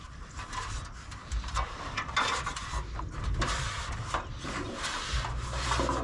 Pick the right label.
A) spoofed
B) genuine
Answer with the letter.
B